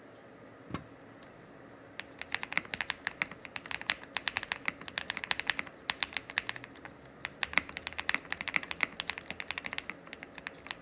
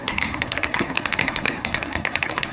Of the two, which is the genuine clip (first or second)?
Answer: first